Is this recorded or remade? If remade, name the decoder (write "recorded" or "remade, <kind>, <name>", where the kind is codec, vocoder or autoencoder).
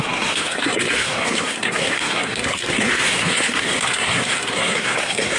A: remade, codec, SNAC